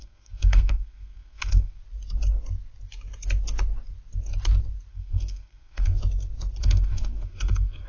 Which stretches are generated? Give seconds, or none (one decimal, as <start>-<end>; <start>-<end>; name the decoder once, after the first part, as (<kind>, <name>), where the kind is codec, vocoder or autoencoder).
0.0-1.8 (codec, SNAC); 4.9-6.0; 6.6-7.9